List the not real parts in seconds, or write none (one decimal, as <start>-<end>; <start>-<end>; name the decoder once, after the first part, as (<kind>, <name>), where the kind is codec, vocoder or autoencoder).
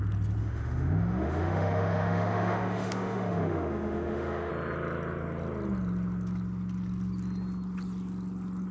0.4-4.5 (autoencoder, DAC-VAE)